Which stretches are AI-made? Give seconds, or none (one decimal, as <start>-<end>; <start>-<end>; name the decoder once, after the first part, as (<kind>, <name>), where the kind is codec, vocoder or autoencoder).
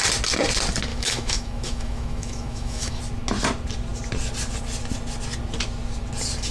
0.9-3.0 (autoencoder, DAC-VAE)